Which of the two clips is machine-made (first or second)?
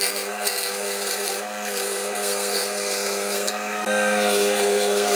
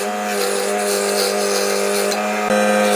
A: first